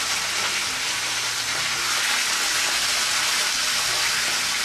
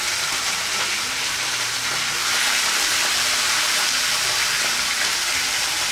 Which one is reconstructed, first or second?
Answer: second